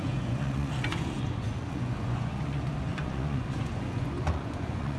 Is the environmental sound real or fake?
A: fake